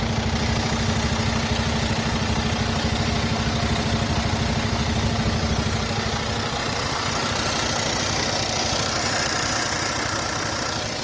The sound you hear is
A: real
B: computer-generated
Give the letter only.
A